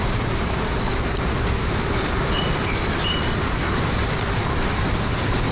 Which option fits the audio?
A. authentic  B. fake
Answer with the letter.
B